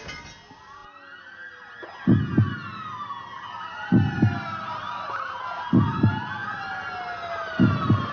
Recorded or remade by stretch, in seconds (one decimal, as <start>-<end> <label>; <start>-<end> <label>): 0.0-8.1 recorded